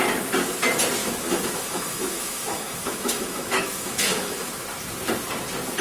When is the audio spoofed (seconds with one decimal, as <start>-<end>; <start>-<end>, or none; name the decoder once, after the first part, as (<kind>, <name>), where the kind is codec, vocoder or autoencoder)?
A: 1.0-4.5 (autoencoder, DAC-VAE)